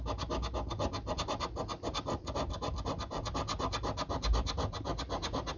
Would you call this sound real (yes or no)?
yes